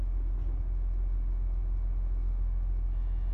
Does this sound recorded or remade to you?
recorded